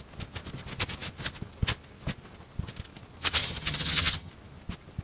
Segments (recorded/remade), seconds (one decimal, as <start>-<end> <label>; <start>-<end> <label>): 0.0-3.4 recorded; 3.4-4.3 remade; 4.3-5.0 recorded